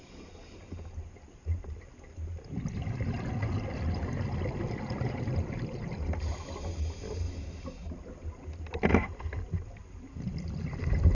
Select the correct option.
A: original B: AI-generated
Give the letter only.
A